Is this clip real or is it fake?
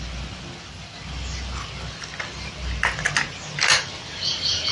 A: real